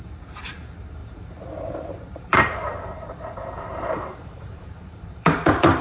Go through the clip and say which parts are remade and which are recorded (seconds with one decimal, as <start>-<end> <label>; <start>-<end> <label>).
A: 0.0-5.8 remade